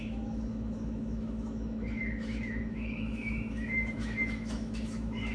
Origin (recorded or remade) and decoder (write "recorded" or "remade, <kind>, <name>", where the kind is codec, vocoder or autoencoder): remade, autoencoder, DAC-VAE